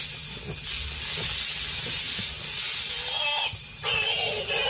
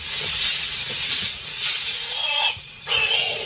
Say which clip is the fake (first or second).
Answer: second